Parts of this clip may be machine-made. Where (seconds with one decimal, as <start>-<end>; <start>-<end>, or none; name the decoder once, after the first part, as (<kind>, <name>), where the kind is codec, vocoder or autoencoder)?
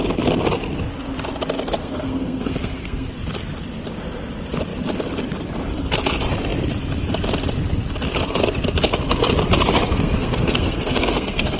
1.8-3.1 (codec, SNAC); 9.9-11.6